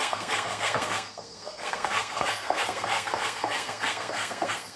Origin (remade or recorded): remade